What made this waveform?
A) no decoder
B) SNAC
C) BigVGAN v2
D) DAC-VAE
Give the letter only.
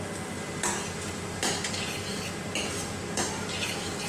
A